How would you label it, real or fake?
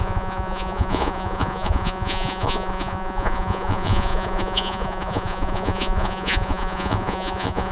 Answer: fake